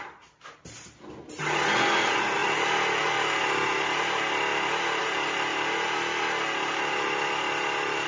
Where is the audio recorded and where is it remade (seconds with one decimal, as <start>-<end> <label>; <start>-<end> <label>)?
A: 0.0-8.1 recorded